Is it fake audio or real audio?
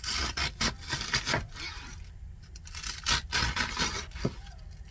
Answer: real